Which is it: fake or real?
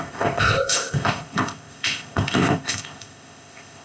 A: fake